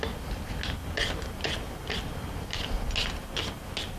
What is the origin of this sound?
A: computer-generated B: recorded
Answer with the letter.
B